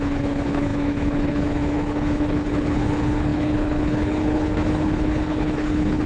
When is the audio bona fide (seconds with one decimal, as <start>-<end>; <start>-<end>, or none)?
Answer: none